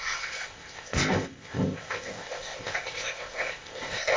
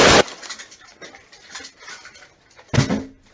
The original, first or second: second